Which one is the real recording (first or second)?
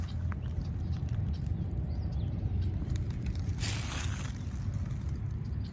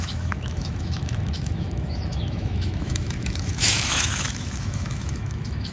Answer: first